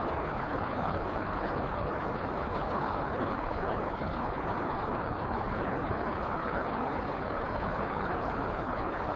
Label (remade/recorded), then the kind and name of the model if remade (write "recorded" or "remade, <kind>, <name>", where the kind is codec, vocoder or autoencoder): remade, codec, HILCodec